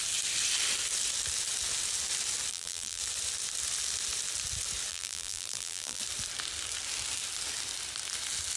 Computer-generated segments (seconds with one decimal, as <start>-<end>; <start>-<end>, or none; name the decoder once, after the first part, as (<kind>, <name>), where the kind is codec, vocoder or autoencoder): 2.5-3.0 (vocoder, BigVGAN v2); 4.9-6.0